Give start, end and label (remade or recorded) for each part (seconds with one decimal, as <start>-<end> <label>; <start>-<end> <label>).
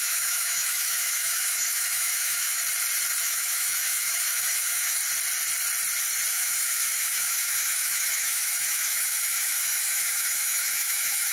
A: 0.0-2.6 remade; 2.6-3.2 recorded; 3.2-5.0 remade; 5.0-6.3 recorded; 6.3-11.3 remade